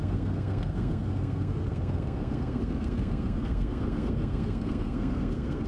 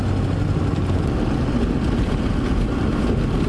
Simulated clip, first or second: first